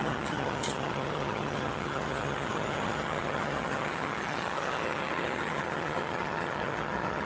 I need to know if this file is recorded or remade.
remade